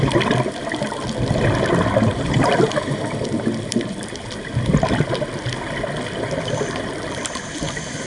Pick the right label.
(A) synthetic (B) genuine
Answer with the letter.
A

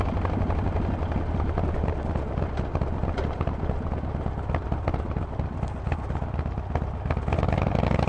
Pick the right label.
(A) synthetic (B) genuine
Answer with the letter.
B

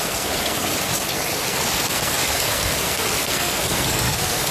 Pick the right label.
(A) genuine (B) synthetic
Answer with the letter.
B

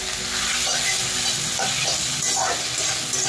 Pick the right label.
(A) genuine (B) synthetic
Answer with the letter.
A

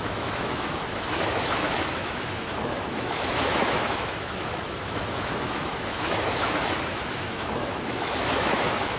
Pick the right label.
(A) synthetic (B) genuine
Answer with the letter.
A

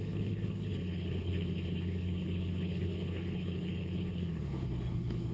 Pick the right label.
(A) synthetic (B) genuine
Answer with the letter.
A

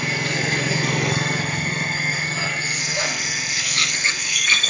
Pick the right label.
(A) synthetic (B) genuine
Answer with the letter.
A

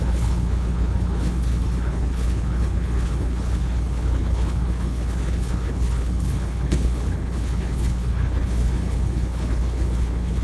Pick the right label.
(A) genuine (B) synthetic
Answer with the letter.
B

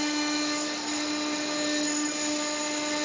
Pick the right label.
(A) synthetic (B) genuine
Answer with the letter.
B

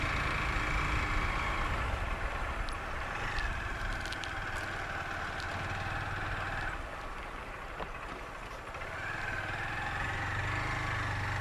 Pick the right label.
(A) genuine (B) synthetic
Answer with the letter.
A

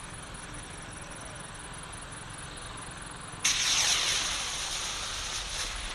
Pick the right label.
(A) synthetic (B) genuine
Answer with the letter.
B